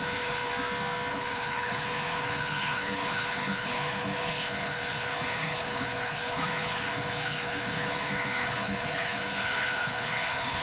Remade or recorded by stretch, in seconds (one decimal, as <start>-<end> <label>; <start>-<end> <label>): 0.0-0.5 remade; 0.5-1.1 recorded; 1.1-10.6 remade